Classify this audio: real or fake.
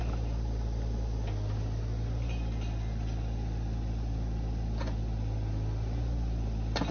real